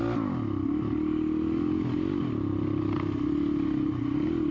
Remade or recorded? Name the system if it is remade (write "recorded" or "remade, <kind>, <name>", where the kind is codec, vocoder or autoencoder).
recorded